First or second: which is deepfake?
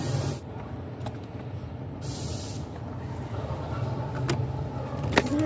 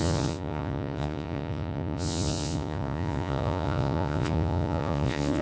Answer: second